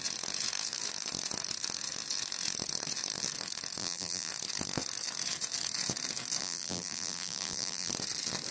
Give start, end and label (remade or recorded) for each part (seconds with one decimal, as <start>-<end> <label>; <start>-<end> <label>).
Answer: 0.0-3.8 recorded; 3.8-4.3 remade; 4.3-6.4 recorded; 6.4-7.9 remade; 7.9-8.5 recorded